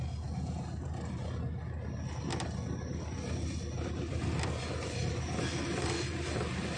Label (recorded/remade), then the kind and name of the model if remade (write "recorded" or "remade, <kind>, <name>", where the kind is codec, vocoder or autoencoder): recorded